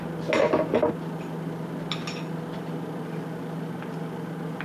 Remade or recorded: recorded